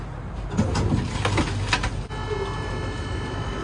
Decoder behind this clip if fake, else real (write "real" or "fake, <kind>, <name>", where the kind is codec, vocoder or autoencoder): real